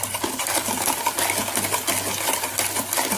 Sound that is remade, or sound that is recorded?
recorded